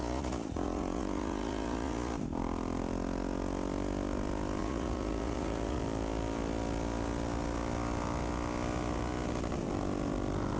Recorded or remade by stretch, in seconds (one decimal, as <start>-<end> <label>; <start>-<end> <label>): 0.0-2.1 remade; 2.1-4.6 recorded; 4.6-5.8 remade; 5.8-10.6 recorded